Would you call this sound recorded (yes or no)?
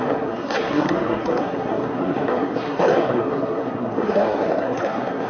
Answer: no